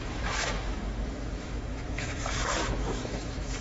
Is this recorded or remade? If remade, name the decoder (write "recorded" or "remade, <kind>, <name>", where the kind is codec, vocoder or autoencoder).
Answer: remade, autoencoder, DAC-VAE